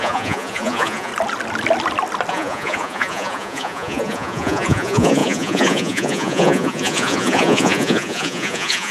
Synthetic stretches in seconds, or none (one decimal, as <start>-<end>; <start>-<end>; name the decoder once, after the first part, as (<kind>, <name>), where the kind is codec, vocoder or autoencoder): 0.0-1.1 (vocoder, Vocos); 2.3-8.9